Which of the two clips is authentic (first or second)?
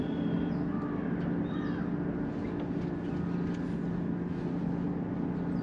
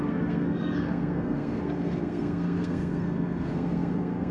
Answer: first